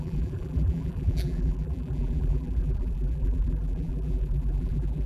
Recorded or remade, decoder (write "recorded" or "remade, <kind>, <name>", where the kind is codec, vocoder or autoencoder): remade, vocoder, BigVGAN v2